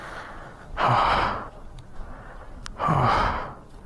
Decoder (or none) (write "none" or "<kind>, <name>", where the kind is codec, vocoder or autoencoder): none